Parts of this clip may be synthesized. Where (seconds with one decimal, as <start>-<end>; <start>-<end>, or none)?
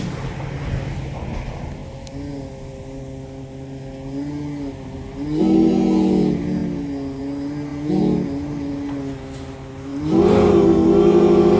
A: none